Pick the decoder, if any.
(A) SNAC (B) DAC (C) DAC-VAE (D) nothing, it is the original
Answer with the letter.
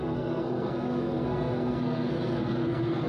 A